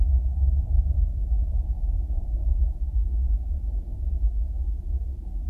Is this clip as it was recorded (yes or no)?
yes